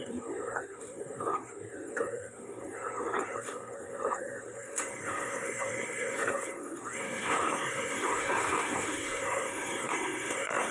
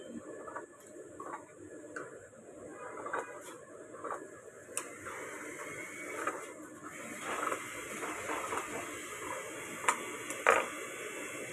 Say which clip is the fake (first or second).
first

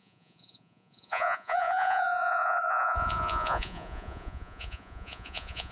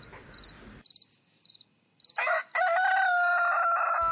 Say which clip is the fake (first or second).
first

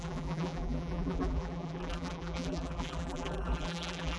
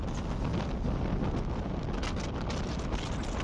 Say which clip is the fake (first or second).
first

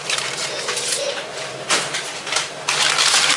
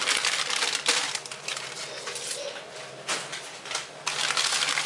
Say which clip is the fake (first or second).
first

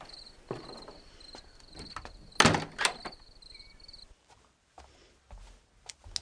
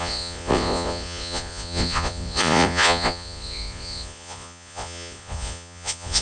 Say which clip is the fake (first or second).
second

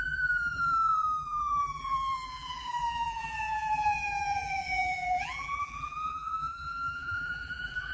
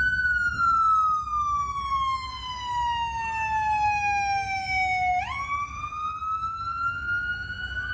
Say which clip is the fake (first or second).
first